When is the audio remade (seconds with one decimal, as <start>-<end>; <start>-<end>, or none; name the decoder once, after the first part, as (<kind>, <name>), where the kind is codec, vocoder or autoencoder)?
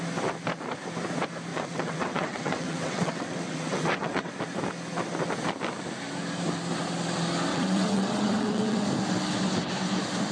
1.5-4.3 (vocoder, WaveNeXt); 7.5-8.8